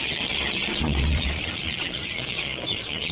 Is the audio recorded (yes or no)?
no